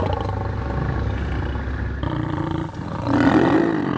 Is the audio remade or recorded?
recorded